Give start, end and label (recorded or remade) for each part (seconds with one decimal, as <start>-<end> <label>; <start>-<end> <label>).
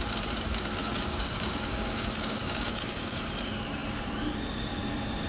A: 0.0-0.8 recorded; 0.8-3.2 remade; 3.2-5.3 recorded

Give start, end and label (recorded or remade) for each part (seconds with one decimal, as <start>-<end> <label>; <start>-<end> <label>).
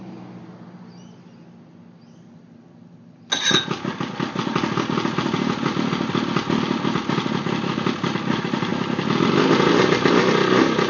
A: 0.0-10.9 recorded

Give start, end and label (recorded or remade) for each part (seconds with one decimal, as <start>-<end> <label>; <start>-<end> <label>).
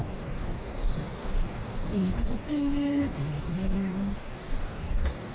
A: 0.0-5.3 remade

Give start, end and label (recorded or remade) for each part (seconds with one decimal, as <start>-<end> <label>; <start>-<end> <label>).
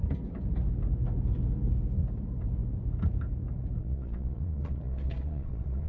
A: 0.0-3.8 recorded; 3.8-5.9 remade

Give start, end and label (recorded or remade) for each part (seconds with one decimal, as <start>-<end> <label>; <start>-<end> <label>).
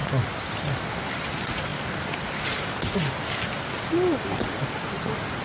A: 0.0-5.4 recorded